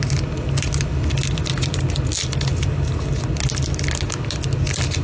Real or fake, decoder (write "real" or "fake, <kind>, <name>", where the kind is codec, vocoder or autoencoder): real